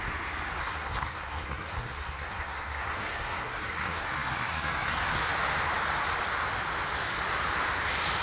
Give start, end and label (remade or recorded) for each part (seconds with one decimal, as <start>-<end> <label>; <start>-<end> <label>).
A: 0.0-0.6 recorded; 0.6-5.0 remade; 5.0-8.2 recorded